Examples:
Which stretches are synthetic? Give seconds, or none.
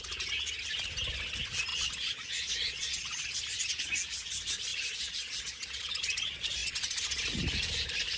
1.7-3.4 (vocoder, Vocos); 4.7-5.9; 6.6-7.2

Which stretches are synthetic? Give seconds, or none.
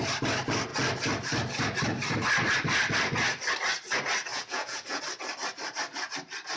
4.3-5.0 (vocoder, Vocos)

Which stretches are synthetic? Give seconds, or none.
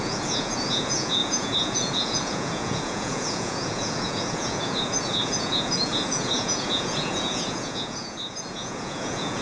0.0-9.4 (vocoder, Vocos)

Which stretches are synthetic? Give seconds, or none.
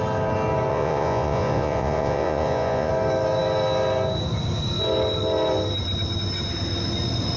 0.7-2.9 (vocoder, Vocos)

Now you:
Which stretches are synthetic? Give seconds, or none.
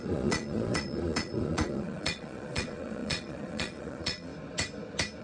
0.0-4.3 (vocoder, Vocos)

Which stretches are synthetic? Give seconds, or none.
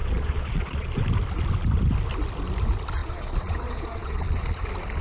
0.0-0.9 (vocoder, Vocos); 3.0-4.6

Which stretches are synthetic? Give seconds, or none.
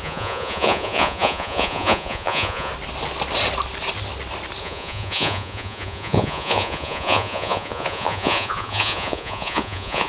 0.0-2.7 (vocoder, Vocos); 4.6-10.1